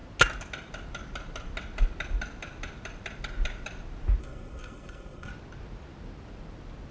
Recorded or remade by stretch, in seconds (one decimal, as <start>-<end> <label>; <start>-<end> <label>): 0.0-4.2 recorded; 4.2-5.3 remade; 5.3-6.9 recorded